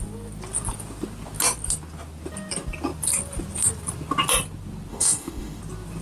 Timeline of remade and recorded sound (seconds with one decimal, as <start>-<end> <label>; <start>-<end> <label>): 0.0-4.9 recorded; 4.9-5.6 remade; 5.6-6.0 recorded